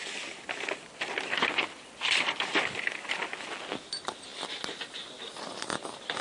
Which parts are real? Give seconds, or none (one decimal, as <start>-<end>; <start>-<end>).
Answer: 3.2-6.2